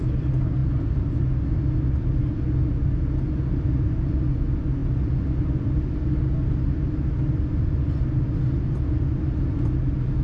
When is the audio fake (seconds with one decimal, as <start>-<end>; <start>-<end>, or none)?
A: none